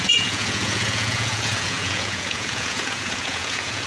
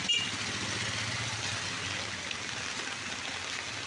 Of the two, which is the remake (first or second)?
first